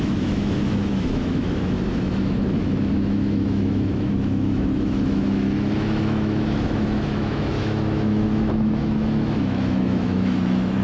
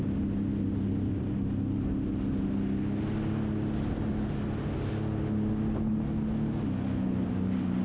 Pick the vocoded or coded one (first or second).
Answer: first